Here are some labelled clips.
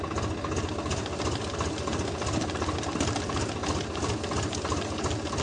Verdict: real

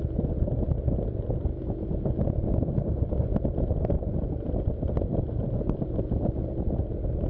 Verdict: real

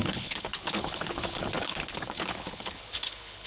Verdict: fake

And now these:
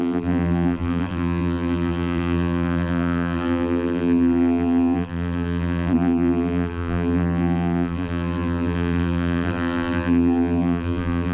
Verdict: fake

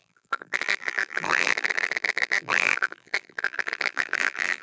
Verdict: fake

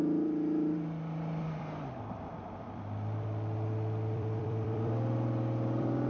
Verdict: fake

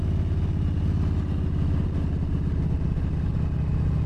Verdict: real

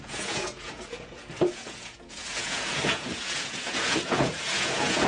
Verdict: fake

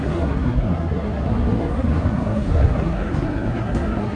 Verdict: fake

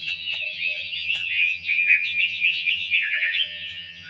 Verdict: fake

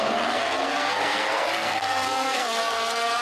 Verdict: fake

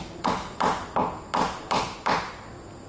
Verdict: real